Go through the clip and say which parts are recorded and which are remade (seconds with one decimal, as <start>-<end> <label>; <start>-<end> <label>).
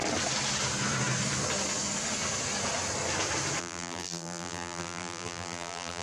0.0-3.6 recorded; 3.6-6.0 remade